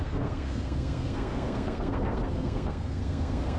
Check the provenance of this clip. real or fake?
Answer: fake